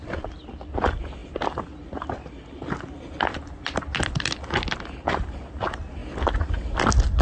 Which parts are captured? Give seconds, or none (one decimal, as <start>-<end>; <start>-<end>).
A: 0.0-7.2

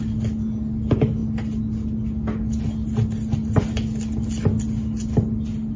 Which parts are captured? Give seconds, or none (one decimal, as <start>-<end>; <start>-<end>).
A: 0.0-5.8

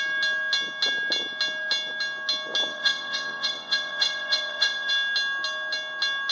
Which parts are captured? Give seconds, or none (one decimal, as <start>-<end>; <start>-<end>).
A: 0.0-2.7; 4.9-6.3

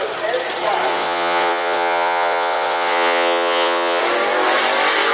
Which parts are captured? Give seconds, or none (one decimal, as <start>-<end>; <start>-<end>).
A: 0.0-0.9; 4.0-5.1

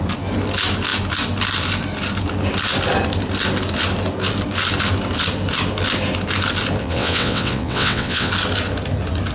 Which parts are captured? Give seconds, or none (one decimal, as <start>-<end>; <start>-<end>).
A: 0.0-6.8; 8.3-9.3